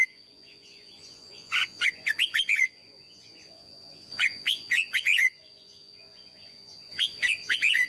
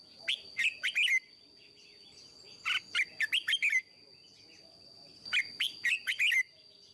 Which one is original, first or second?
second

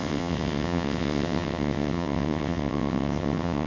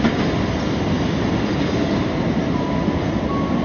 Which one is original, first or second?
second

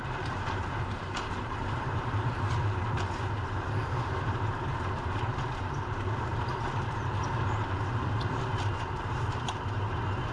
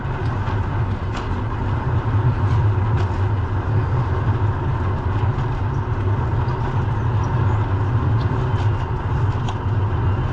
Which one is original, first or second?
second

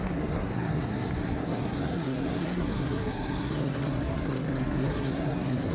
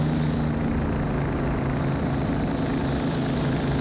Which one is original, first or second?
second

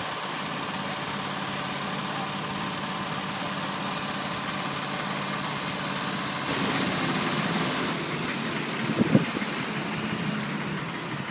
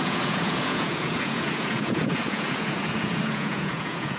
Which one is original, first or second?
first